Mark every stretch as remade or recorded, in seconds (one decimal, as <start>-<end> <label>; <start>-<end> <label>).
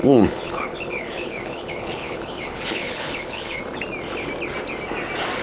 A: 0.0-3.6 remade; 3.6-5.4 recorded